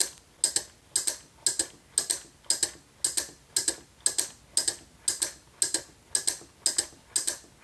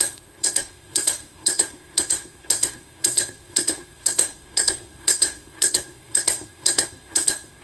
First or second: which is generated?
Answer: second